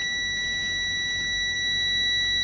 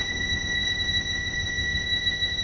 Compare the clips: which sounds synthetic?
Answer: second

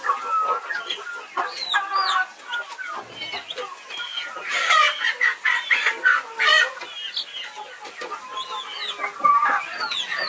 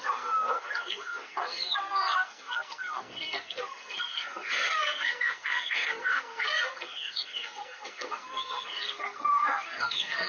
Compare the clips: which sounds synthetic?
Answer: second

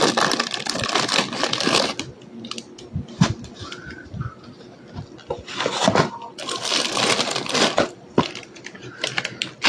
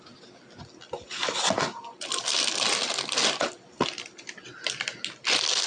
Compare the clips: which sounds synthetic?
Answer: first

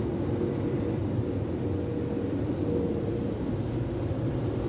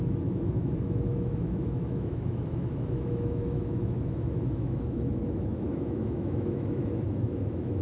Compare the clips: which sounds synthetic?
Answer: second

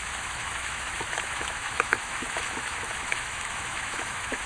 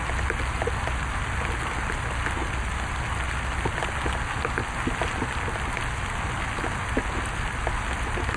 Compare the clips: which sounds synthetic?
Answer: first